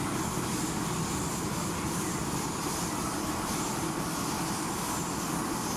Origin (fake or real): real